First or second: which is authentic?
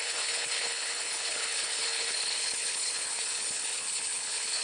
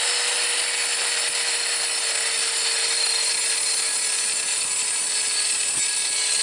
second